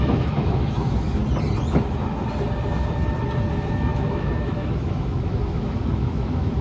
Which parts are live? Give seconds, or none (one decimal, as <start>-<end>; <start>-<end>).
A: 1.2-3.5